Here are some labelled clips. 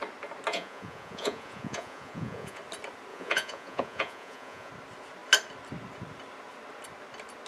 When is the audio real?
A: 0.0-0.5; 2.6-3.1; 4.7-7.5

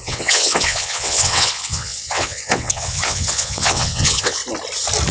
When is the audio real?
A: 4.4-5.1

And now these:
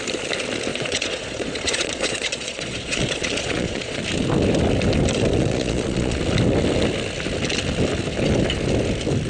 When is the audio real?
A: 0.0-0.7; 4.0-5.3; 6.2-9.3

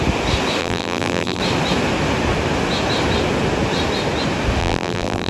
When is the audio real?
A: 0.0-0.6; 1.4-4.6

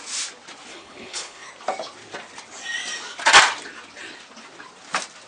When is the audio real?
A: 0.0-0.7; 1.5-5.3

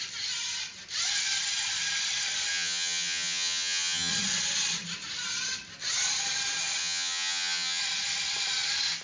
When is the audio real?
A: 0.0-2.5; 4.1-6.8; 7.8-9.0